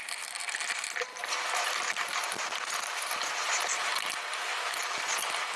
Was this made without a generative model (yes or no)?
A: yes